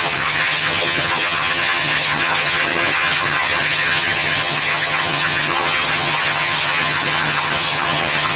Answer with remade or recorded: remade